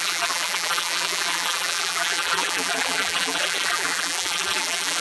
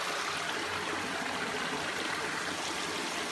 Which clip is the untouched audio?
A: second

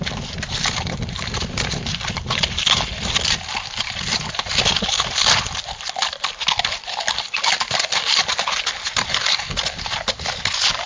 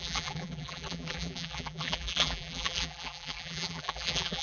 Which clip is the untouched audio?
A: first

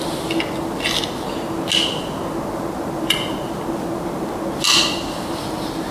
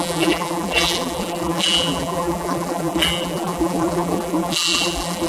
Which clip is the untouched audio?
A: first